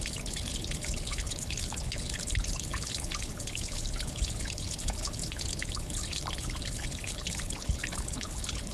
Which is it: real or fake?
fake